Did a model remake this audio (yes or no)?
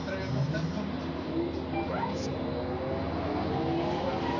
no